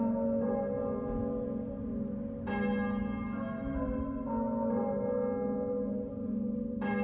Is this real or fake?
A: real